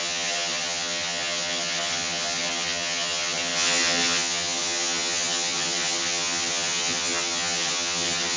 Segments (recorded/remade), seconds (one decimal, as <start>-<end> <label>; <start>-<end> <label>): 0.0-8.4 remade